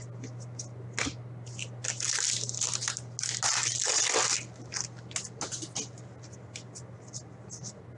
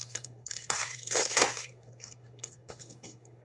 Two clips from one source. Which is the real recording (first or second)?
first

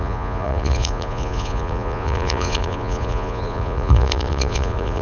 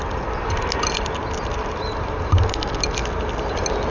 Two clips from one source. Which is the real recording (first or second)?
second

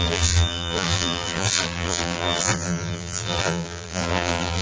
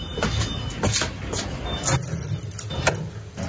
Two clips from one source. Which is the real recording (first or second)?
second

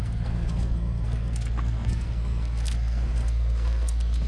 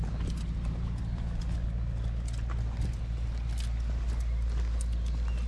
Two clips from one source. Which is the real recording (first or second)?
second